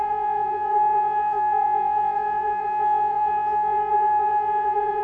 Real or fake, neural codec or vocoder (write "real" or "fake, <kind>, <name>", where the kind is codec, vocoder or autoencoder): fake, vocoder, Vocos